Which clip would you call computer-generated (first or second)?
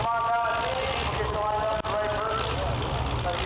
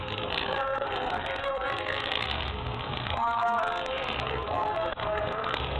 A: second